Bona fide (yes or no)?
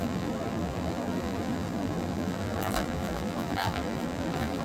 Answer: no